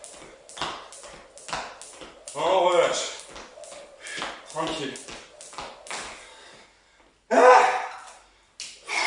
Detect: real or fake real